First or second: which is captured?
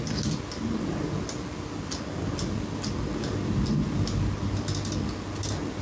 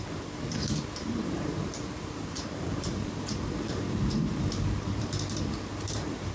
first